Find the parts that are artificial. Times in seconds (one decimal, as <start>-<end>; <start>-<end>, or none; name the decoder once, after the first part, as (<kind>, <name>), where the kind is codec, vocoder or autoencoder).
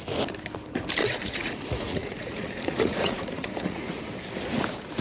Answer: 1.0-4.0 (vocoder, Vocos)